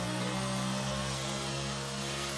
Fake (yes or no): yes